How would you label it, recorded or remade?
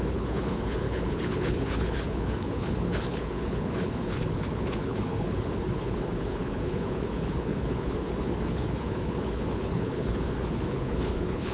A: remade